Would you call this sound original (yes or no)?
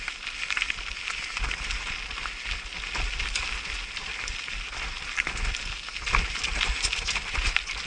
yes